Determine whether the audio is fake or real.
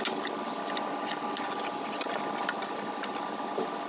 real